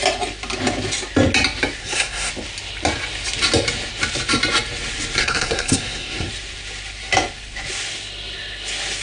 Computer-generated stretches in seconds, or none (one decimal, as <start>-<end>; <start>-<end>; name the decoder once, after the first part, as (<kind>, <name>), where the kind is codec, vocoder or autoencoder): 1.8-2.3 (codec, SNAC); 5.2-6.3